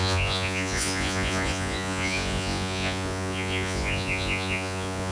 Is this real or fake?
fake